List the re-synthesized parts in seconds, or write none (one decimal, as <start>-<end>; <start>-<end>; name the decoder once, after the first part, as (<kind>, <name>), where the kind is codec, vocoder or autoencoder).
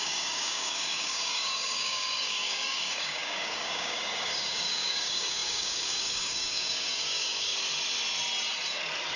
0.0-7.5 (codec, DAC)